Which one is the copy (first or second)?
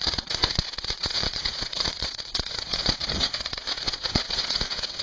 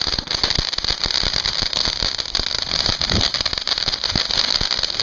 first